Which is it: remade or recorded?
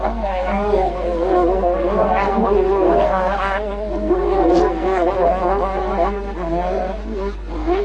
remade